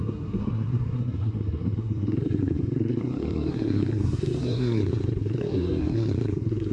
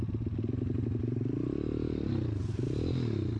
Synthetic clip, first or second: first